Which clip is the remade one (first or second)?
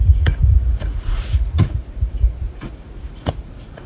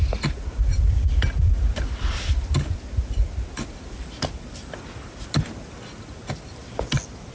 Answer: first